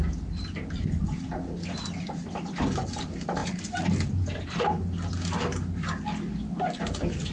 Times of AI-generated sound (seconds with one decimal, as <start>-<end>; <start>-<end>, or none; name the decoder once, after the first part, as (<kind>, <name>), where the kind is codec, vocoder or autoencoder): none